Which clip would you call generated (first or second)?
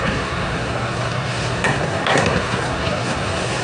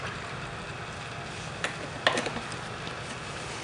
first